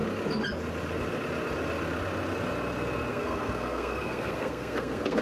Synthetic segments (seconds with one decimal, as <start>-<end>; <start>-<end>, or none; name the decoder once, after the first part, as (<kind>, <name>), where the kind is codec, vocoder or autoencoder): 3.1-5.2 (codec, SNAC)